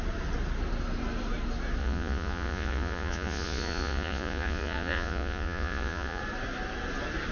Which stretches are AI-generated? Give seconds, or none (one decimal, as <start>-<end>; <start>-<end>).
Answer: 1.8-6.2